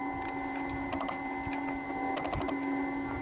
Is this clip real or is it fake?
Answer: real